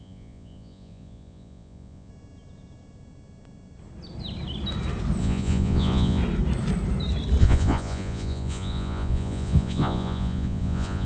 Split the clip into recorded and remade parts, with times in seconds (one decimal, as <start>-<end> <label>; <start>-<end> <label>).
0.0-2.1 remade; 2.1-5.2 recorded; 5.2-6.2 remade; 6.2-7.4 recorded; 7.4-11.1 remade